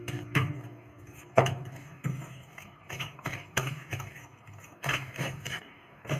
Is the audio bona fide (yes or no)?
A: no